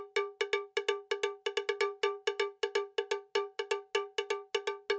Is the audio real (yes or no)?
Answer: yes